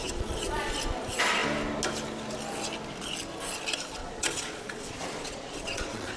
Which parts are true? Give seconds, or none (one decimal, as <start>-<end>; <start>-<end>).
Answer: 0.7-4.0